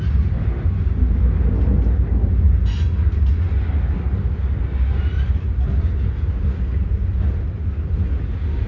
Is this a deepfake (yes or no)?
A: no